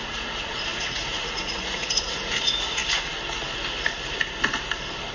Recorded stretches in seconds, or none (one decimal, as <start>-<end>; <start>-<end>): 2.8-5.1